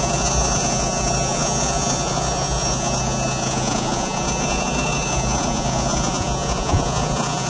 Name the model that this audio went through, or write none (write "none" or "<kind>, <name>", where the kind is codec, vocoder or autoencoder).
vocoder, Vocos